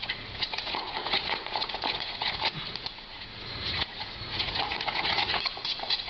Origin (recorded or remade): remade